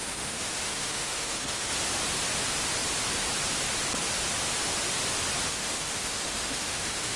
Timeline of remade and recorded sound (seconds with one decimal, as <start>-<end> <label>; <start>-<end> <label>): 0.0-1.7 remade; 1.7-5.5 recorded; 5.5-7.2 remade